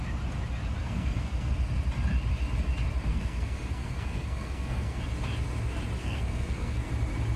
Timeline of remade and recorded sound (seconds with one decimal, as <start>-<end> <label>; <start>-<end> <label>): 0.0-0.8 recorded; 0.8-1.5 remade; 1.5-3.1 recorded; 3.1-5.0 remade; 5.0-6.0 recorded; 6.0-6.9 remade; 6.9-7.4 recorded